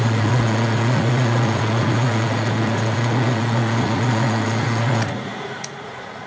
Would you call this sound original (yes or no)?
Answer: no